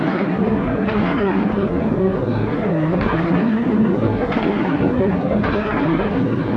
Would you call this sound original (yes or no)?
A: no